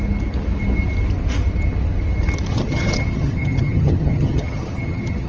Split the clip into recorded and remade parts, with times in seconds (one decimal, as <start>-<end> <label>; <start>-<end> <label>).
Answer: 0.0-2.5 recorded; 2.5-5.3 remade